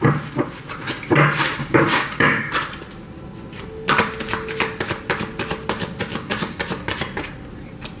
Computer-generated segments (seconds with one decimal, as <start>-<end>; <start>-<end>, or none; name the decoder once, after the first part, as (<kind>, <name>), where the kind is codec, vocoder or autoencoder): 1.6-2.4 (codec, DAC); 6.1-6.6